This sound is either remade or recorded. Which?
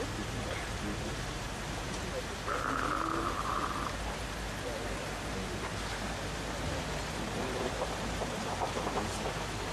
recorded